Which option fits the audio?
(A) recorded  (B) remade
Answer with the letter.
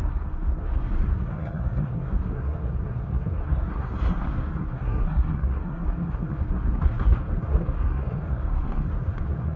B